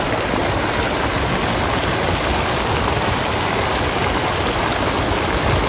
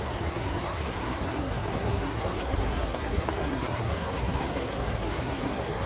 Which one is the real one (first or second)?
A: first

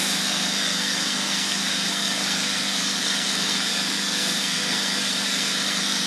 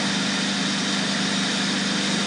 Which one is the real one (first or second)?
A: second